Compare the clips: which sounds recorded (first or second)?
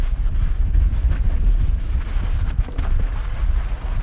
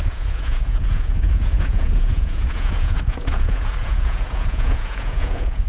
first